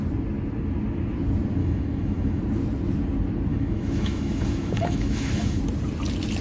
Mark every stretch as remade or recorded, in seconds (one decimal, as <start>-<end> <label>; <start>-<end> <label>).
0.0-1.6 recorded; 1.6-2.4 remade; 2.4-3.5 recorded; 3.5-5.6 remade; 5.6-6.4 recorded